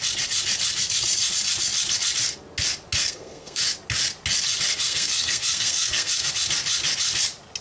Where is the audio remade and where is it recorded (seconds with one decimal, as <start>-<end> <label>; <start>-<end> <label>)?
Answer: 0.0-3.0 recorded; 3.0-3.6 remade; 3.6-4.7 recorded; 4.7-6.3 remade; 6.3-7.6 recorded

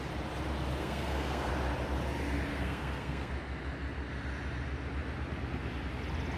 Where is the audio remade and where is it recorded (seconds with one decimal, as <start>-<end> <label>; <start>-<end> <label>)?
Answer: 0.0-0.8 recorded; 0.8-1.5 remade; 1.5-2.5 recorded; 2.5-3.3 remade; 3.3-6.4 recorded